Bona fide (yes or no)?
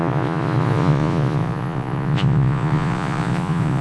no